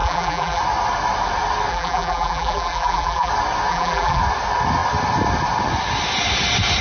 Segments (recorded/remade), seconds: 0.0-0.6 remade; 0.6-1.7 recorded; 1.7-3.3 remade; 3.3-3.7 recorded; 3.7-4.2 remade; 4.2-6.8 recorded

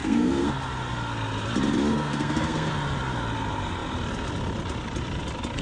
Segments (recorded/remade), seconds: 0.0-0.5 remade; 0.5-1.9 recorded; 1.9-2.7 remade; 2.7-5.6 recorded

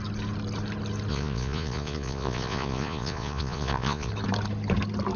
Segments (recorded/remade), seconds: 0.0-1.1 recorded; 1.1-4.1 remade; 4.1-5.2 recorded

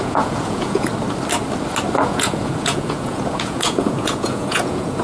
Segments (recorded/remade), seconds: 0.0-0.9 remade; 0.9-2.0 recorded; 2.0-5.0 remade

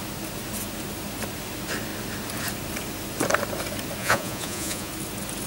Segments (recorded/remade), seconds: 0.0-4.0 recorded; 4.0-4.9 remade; 4.9-5.5 recorded

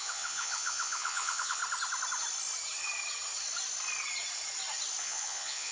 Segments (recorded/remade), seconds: 0.0-1.6 remade; 1.6-5.0 recorded; 5.0-5.7 remade